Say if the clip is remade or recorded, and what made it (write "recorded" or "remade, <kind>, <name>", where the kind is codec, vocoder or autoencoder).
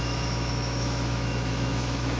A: remade, autoencoder, DAC-VAE